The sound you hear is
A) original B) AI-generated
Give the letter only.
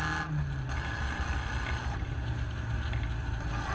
A